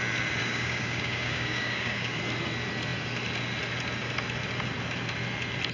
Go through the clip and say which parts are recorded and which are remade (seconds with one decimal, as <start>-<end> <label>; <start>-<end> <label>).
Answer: 0.0-0.4 recorded; 0.4-2.2 remade; 2.2-5.7 recorded